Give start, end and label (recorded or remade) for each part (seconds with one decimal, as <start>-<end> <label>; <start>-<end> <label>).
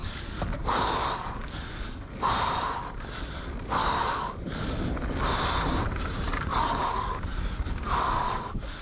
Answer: 0.0-2.3 remade; 2.3-3.8 recorded; 3.8-4.8 remade; 4.8-6.3 recorded; 6.3-8.8 remade